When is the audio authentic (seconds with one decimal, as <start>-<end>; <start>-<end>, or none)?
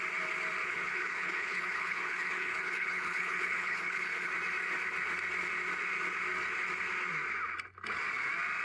0.0-0.6; 4.3-8.6